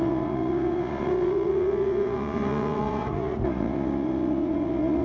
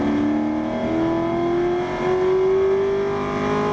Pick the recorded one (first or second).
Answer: second